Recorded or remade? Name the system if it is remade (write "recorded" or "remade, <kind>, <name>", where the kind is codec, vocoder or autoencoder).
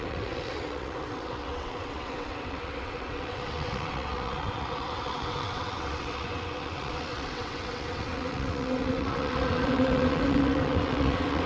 remade, vocoder, WaveNeXt